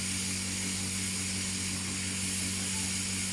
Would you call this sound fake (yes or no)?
no